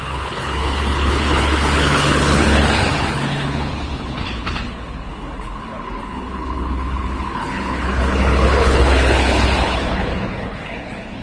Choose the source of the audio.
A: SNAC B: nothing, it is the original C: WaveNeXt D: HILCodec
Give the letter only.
D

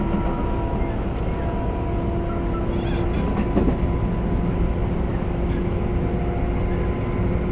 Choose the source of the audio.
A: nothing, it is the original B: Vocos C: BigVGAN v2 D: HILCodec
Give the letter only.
A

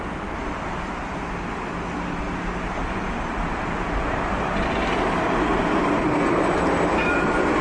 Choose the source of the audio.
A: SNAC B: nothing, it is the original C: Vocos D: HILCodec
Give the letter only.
B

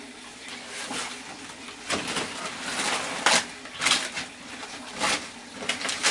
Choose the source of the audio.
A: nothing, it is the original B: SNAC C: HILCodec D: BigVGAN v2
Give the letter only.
A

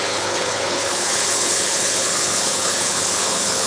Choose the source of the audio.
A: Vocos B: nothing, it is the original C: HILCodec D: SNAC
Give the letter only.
C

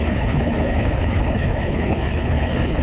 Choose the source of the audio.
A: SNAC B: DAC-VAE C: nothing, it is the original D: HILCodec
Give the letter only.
D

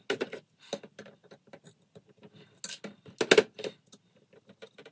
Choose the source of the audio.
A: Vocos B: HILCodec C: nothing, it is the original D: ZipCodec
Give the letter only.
C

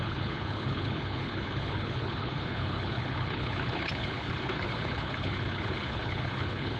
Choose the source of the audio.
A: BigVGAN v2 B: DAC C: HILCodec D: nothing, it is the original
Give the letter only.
C